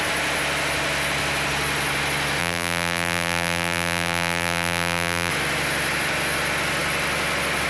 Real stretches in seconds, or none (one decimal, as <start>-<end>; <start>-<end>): 0.0-2.4; 5.3-7.7